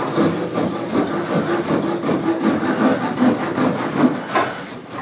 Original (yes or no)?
no